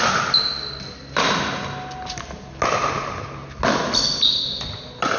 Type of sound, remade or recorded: recorded